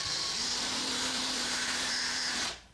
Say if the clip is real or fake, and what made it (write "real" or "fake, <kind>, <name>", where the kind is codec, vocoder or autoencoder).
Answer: fake, vocoder, BigVGAN v2